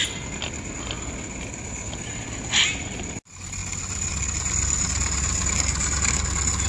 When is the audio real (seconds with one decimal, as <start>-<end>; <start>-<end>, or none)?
0.0-6.7